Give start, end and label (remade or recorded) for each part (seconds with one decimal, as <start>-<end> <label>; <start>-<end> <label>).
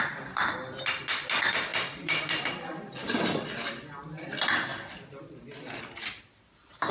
0.0-6.9 recorded